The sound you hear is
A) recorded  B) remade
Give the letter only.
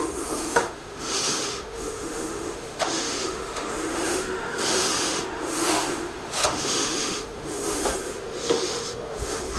B